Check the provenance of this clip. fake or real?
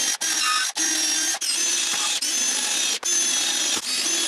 real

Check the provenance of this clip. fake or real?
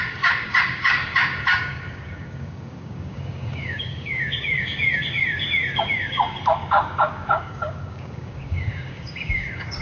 fake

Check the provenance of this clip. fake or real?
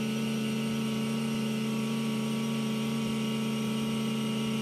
real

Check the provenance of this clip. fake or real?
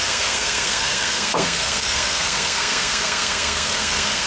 fake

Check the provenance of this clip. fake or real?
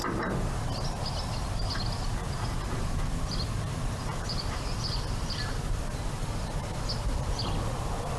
real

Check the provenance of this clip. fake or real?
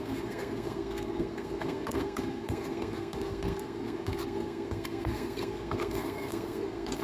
fake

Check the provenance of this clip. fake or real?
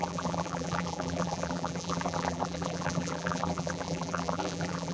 fake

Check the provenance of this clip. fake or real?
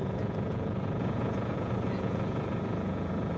fake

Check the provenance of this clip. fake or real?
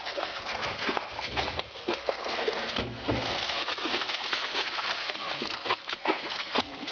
fake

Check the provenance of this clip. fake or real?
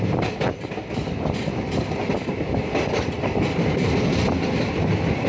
real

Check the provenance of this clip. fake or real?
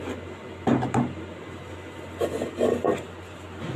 real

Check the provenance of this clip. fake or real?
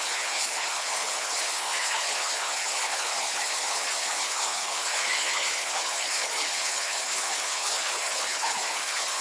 fake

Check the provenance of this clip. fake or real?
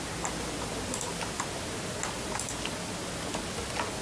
real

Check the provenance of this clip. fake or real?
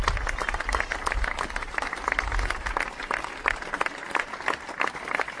real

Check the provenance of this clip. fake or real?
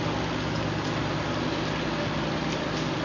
real